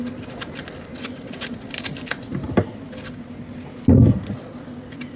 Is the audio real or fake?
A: real